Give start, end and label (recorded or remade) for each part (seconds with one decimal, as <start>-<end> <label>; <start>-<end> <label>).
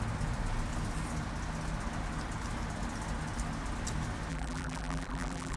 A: 0.0-4.3 recorded; 4.3-5.6 remade